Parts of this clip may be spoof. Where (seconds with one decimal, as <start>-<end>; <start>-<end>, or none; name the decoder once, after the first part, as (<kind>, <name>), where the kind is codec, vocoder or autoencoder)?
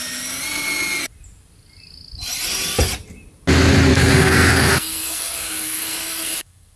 3.9-6.8 (codec, SNAC)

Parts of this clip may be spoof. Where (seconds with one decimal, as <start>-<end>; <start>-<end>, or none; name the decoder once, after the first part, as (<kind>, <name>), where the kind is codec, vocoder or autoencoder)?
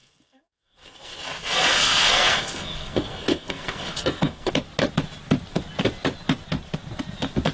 0.0-4.5 (codec, SNAC)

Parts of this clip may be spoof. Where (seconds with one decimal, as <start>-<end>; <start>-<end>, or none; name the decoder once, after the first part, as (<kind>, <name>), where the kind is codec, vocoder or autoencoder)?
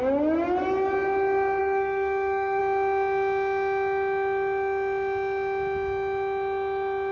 1.6-2.6 (codec, SNAC)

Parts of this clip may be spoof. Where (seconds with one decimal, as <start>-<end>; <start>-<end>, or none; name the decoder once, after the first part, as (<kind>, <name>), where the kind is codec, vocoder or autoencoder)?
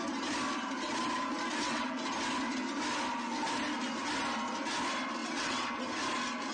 1.5-2.0 (vocoder, WaveNeXt); 5.2-5.8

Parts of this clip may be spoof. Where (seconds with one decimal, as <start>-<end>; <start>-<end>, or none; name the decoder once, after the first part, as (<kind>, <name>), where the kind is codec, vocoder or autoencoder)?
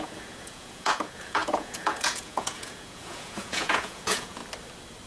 0.0-4.4 (vocoder, Vocos)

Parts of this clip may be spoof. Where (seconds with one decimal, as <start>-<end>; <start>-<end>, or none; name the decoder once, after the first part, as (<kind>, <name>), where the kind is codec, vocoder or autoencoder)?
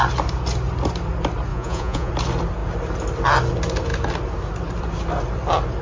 1.5-2.1 (vocoder, Vocos)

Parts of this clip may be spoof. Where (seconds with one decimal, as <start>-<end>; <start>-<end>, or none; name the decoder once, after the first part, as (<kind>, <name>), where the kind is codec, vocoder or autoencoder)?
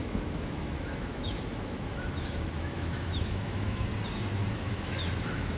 0.0-3.9 (autoencoder, DAC-VAE); 4.5-5.6